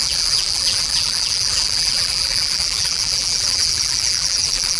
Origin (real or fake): fake